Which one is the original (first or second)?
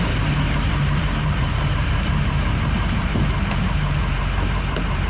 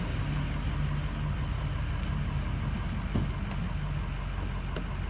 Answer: second